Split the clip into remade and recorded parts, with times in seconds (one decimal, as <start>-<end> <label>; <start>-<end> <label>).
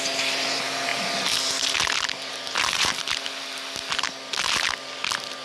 0.0-5.4 recorded